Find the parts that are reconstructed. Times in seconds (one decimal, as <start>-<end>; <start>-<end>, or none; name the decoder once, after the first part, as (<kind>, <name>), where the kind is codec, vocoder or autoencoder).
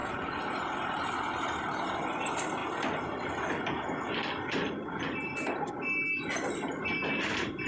none